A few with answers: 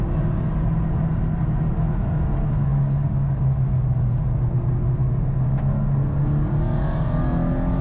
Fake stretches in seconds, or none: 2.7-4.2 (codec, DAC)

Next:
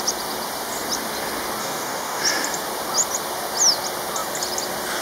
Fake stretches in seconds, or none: 1.6-2.2 (codec, DAC)

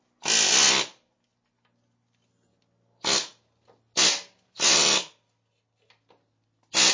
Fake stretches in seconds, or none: none